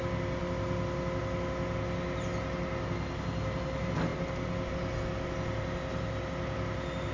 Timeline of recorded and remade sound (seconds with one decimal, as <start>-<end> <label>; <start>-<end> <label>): 0.0-7.1 recorded